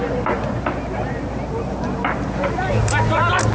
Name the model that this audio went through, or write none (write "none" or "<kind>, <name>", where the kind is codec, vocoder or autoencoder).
none